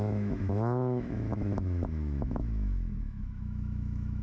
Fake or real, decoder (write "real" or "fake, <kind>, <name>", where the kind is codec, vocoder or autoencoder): fake, autoencoder, DAC-VAE